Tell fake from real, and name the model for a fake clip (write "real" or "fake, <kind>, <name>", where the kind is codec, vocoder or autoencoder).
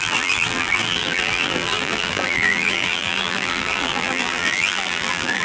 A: fake, vocoder, BigVGAN v2